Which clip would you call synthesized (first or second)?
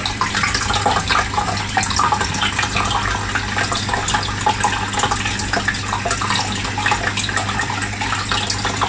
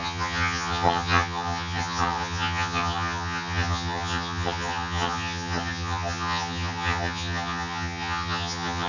second